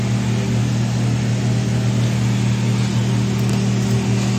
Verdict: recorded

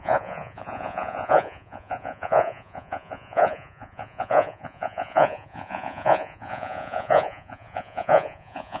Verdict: remade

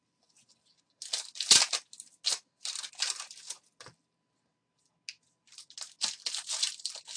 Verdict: recorded